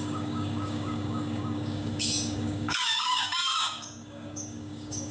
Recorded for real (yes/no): no